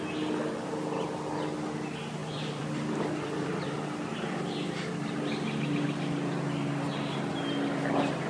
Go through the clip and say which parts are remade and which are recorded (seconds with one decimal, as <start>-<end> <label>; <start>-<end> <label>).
0.0-2.2 recorded; 2.2-3.8 remade; 3.8-8.3 recorded